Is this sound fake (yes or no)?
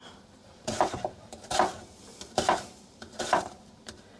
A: yes